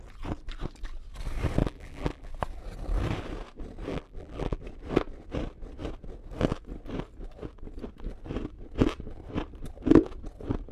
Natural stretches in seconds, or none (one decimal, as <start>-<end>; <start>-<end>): 0.0-1.6; 2.3-3.9; 4.6-10.7